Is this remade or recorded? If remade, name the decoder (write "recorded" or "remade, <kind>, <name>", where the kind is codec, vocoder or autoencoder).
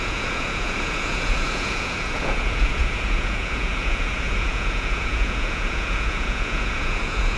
remade, vocoder, Vocos